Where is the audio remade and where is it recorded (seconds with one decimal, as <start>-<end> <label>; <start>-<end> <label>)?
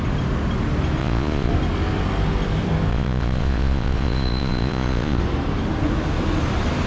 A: 0.0-1.0 recorded; 1.0-1.5 remade; 1.5-2.9 recorded; 2.9-5.2 remade; 5.2-6.9 recorded